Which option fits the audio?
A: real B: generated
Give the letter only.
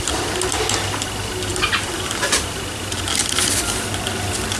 A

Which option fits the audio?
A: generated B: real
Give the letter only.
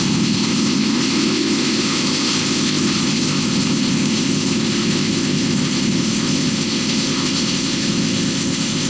A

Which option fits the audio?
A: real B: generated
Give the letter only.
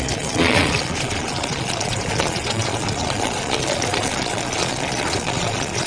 B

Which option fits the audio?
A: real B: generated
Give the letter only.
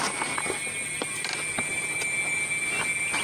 A